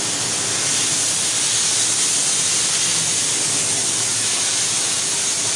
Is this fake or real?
real